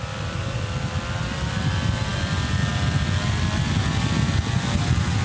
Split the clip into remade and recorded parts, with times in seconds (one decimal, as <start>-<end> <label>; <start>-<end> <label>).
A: 0.0-5.2 recorded